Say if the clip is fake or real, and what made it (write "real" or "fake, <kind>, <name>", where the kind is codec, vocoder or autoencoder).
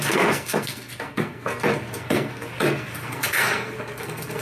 fake, codec, SNAC